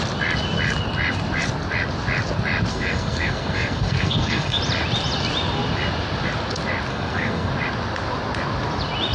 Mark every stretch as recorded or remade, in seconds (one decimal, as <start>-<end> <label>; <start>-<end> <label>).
0.0-2.7 recorded; 2.7-4.6 remade; 4.6-6.9 recorded; 6.9-7.5 remade; 7.5-9.1 recorded